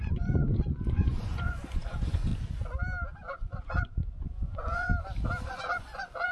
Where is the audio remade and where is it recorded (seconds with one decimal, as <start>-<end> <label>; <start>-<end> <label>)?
0.0-2.3 remade; 2.3-3.1 recorded; 3.1-4.9 remade; 4.9-5.5 recorded; 5.5-6.3 remade